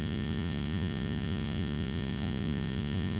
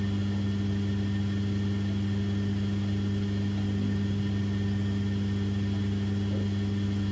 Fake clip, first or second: first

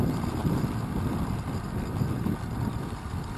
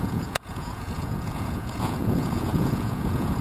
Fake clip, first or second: second